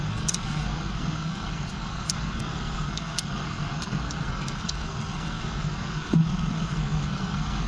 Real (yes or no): no